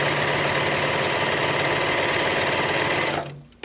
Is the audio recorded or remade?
recorded